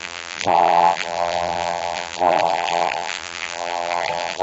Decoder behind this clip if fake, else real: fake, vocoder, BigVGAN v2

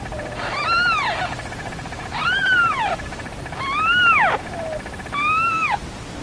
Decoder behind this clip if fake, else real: real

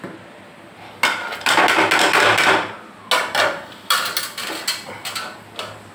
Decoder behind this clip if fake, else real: real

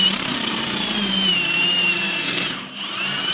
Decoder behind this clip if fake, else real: fake, vocoder, BigVGAN v2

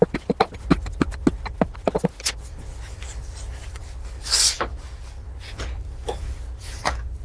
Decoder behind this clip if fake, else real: real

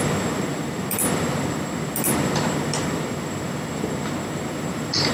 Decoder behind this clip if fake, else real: fake, vocoder, BigVGAN v2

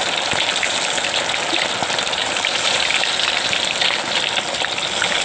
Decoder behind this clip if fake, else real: real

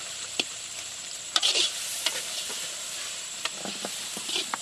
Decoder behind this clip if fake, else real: fake, vocoder, BigVGAN v2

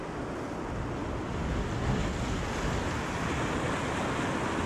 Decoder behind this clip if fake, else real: real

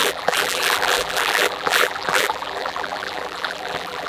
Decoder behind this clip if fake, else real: fake, vocoder, BigVGAN v2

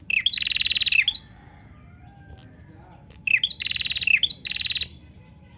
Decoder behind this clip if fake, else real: real